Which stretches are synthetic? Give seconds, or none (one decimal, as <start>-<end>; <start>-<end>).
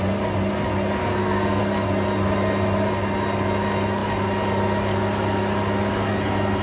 1.0-1.6